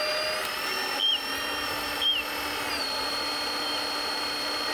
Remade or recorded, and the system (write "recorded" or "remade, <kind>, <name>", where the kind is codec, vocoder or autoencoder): recorded